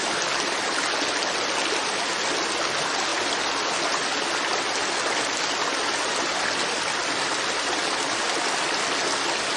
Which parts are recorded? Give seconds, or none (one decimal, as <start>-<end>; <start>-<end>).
0.0-9.6